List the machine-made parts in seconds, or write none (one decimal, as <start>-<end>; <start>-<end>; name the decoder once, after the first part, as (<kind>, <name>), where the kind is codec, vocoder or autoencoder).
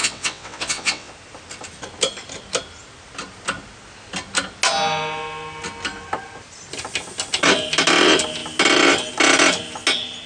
0.0-1.1 (vocoder, WaveNeXt)